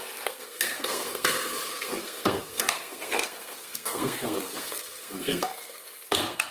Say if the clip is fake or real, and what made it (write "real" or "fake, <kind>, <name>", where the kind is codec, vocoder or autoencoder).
fake, codec, SNAC